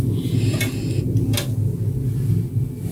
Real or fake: real